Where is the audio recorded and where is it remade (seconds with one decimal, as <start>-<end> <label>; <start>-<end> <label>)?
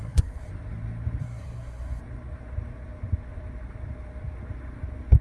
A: 0.0-0.5 remade; 0.5-1.2 recorded; 1.2-2.0 remade; 2.0-5.2 recorded